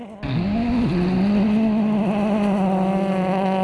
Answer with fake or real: real